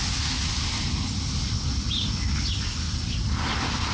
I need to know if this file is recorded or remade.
recorded